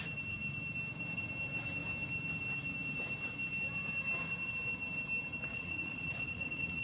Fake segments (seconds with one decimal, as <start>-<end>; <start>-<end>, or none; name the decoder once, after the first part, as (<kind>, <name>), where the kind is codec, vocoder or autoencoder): 5.5-6.8 (vocoder, Vocos)